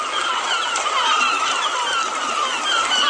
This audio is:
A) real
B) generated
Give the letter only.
A